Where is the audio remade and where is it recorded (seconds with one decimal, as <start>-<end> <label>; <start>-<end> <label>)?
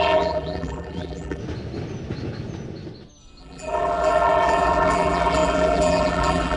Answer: 0.0-1.4 remade; 1.4-3.4 recorded; 3.4-6.6 remade